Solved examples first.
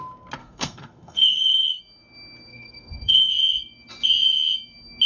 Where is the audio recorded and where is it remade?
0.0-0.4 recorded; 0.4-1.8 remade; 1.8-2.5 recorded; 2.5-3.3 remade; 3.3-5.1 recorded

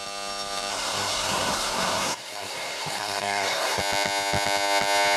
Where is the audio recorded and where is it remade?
0.0-0.7 recorded; 0.7-3.8 remade; 3.8-5.2 recorded

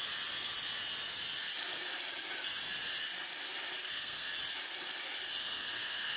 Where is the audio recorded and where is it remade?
0.0-3.8 recorded; 3.8-4.3 remade; 4.3-5.4 recorded; 5.4-6.2 remade

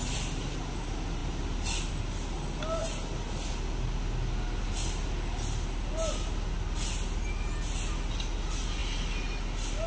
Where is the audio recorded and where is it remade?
0.0-9.9 recorded

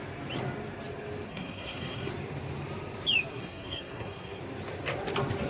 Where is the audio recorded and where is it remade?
0.0-1.3 recorded; 1.3-2.1 remade; 2.1-3.3 recorded; 3.3-4.4 remade; 4.4-5.5 recorded